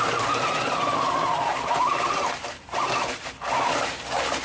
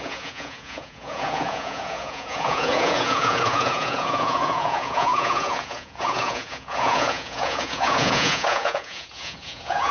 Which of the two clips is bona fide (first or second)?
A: first